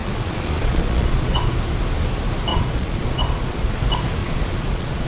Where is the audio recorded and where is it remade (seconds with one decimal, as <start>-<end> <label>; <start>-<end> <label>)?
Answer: 0.0-1.5 remade; 1.5-2.5 recorded; 2.5-3.8 remade; 3.8-4.2 recorded; 4.2-5.1 remade